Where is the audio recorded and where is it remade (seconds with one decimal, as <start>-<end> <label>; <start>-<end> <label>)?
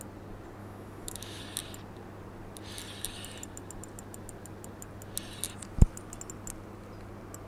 0.0-0.6 recorded; 0.6-1.4 remade; 1.4-7.5 recorded